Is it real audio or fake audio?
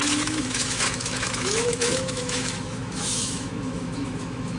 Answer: fake